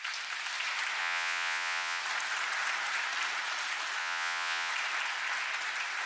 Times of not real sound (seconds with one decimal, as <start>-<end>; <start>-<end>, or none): 1.0-2.0; 4.0-4.7